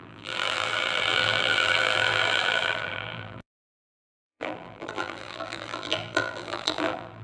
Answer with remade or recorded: remade